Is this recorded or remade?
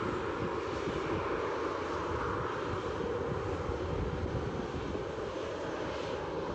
recorded